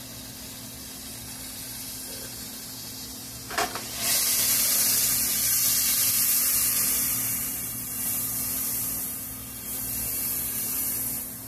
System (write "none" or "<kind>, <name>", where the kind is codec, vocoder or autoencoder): none